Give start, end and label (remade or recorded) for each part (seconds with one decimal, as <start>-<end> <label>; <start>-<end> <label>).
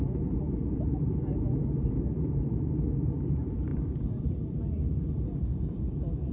0.0-6.3 remade